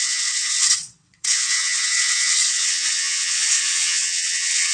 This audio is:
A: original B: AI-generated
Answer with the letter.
B